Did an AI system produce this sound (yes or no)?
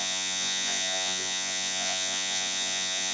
yes